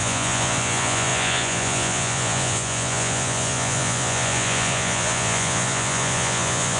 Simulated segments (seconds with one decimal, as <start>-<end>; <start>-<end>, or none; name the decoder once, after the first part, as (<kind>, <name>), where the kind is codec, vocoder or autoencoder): 0.0-6.8 (vocoder, Vocos)